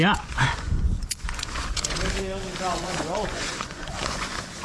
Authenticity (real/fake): fake